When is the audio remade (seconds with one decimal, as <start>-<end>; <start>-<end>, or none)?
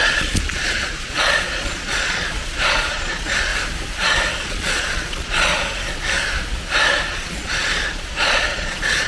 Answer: 0.0-3.5; 4.4-5.5; 7.1-9.1